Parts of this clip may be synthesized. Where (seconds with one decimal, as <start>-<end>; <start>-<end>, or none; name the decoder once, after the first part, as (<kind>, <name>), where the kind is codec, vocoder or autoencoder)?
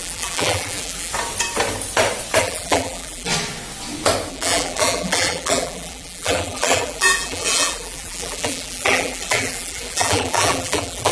0.0-1.1 (vocoder, BigVGAN v2); 2.4-3.3; 4.3-11.1